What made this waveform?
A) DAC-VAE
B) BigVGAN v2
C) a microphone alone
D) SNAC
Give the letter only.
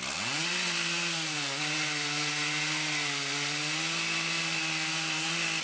C